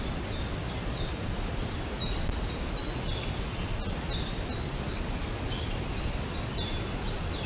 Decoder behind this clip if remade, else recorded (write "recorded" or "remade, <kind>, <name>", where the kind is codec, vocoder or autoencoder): recorded